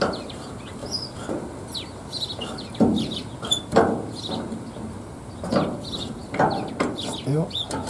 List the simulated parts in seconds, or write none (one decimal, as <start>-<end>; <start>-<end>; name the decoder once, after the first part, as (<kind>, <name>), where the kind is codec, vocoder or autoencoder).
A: none